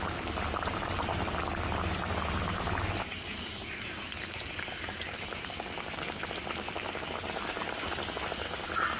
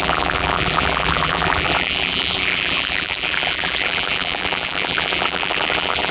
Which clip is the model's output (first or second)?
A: second